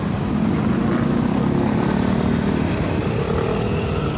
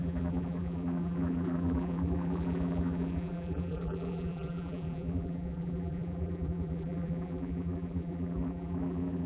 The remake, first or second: second